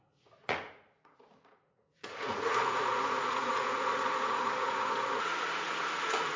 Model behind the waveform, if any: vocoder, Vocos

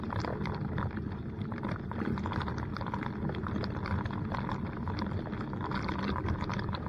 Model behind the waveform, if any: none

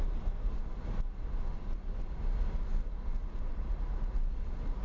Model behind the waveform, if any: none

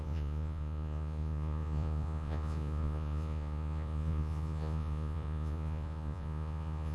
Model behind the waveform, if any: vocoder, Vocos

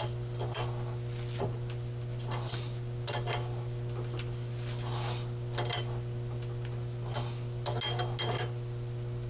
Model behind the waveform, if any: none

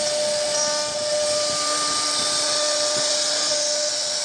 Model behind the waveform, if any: none